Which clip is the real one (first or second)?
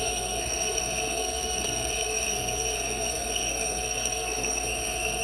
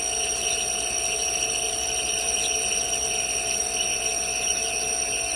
second